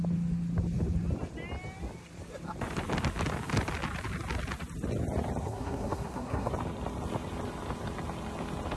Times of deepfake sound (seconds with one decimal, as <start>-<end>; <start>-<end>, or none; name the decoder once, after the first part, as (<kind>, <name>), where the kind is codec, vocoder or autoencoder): 5.4-6.5 (codec, SNAC)